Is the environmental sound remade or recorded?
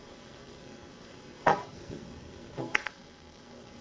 remade